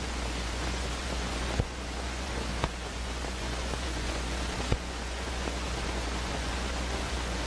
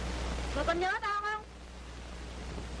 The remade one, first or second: first